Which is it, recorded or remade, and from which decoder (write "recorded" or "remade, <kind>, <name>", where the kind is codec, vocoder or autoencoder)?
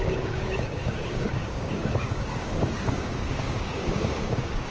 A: remade, codec, DAC